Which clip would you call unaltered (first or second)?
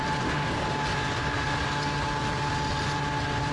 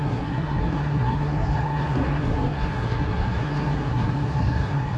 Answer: first